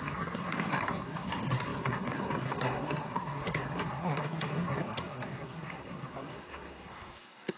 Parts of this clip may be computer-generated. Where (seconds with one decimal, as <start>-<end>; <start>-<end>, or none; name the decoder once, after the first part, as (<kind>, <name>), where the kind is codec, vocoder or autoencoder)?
0.0-7.6 (codec, SNAC)